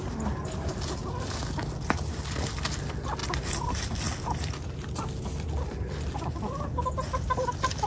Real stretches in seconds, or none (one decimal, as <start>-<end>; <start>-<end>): 0.0-7.9